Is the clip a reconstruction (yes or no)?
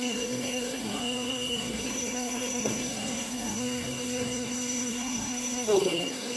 yes